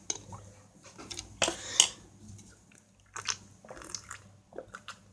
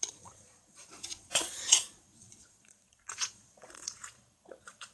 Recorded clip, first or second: first